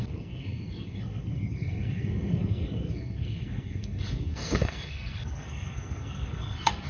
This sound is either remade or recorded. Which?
remade